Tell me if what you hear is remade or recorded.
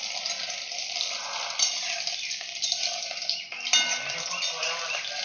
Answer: recorded